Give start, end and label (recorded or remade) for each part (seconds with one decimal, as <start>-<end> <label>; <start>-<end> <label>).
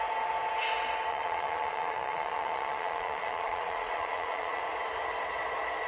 0.0-1.1 recorded; 1.1-4.6 remade; 4.6-5.9 recorded